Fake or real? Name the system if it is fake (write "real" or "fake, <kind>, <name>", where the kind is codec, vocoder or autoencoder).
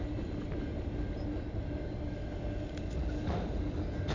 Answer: real